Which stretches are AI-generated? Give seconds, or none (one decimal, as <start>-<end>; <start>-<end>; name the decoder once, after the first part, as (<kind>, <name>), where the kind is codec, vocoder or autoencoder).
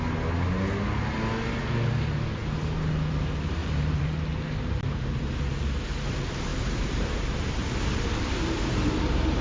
3.6-5.4 (vocoder, BigVGAN v2); 6.5-9.4